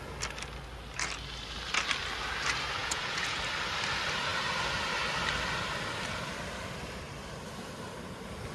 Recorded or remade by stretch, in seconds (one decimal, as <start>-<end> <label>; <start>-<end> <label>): 0.0-2.8 recorded; 2.8-3.4 remade; 3.4-8.5 recorded

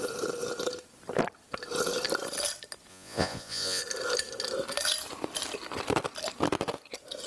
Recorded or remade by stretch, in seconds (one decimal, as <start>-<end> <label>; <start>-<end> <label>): 0.0-2.9 recorded; 2.9-3.8 remade; 3.8-7.3 recorded